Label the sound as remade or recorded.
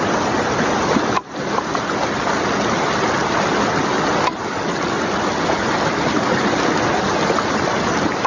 recorded